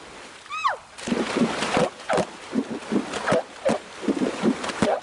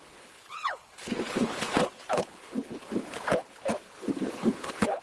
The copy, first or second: second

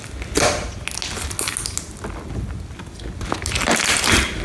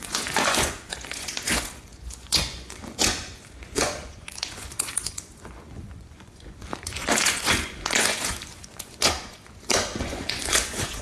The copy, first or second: second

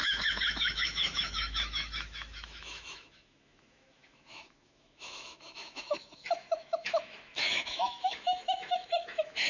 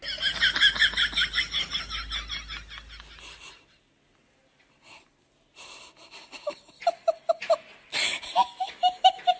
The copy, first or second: first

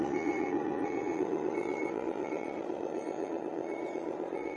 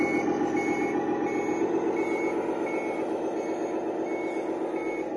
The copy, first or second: first